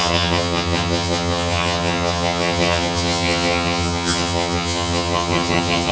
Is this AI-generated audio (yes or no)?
yes